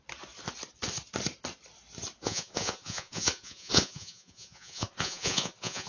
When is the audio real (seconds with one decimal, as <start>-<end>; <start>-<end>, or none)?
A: 0.0-2.2

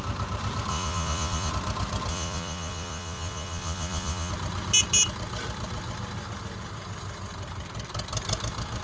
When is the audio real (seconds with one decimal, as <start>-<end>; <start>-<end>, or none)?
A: 0.0-0.7; 1.5-2.1; 4.3-8.8

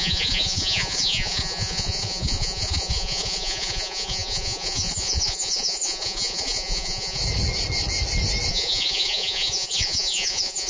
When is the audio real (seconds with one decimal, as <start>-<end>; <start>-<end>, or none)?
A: 7.2-8.5

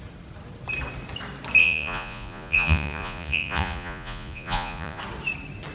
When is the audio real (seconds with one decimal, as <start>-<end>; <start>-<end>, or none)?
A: 0.0-1.6; 5.0-5.7

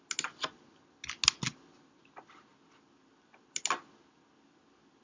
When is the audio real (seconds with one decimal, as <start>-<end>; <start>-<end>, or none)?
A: 0.0-5.0

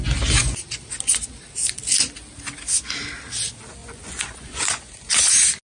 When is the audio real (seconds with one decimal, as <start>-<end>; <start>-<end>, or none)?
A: 0.0-3.8; 5.3-5.8

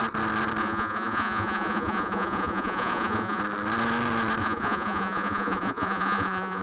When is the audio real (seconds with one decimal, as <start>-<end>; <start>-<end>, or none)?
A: 0.0-0.6; 3.4-4.4